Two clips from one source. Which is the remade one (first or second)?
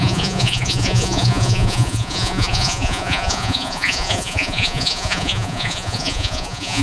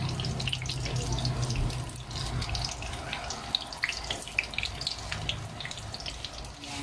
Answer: first